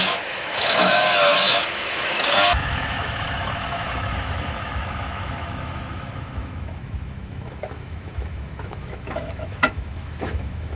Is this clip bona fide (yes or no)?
no